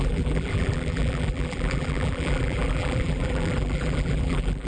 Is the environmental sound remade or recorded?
remade